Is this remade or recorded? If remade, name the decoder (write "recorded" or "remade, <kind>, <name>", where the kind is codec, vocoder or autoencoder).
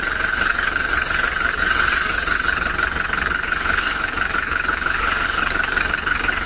remade, codec, DAC